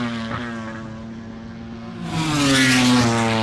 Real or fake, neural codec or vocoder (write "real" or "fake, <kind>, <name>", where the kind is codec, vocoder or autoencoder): real